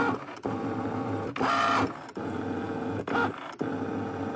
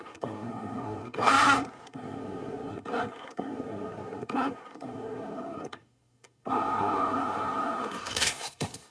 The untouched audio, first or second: first